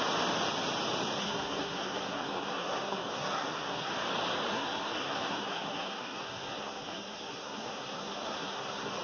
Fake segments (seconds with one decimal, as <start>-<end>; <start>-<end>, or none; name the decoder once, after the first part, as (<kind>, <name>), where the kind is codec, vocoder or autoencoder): 1.2-3.9 (codec, SNAC); 4.5-9.0